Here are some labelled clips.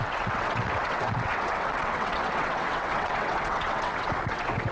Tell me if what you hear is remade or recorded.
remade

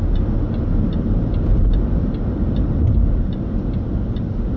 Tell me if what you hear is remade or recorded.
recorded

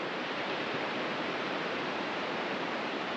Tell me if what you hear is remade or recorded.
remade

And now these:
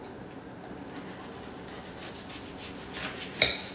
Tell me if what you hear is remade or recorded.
recorded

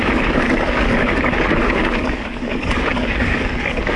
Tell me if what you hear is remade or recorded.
remade